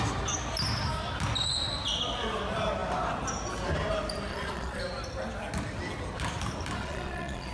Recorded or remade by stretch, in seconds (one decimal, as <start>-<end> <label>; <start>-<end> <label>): 0.0-4.3 recorded; 4.3-4.8 remade; 4.8-6.8 recorded; 6.8-7.5 remade